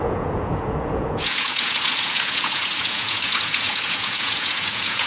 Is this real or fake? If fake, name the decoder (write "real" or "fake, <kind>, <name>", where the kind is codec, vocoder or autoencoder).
fake, vocoder, Vocos